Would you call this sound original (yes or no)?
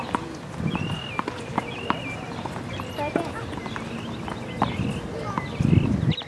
yes